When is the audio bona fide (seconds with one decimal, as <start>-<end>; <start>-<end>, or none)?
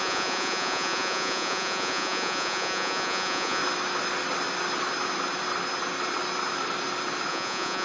3.6-7.3